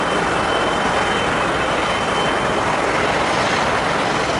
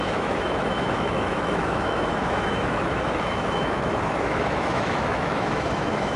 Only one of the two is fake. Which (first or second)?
second